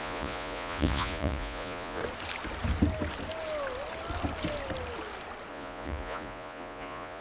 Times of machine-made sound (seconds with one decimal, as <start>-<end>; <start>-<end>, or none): 0.0-2.0; 5.5-7.2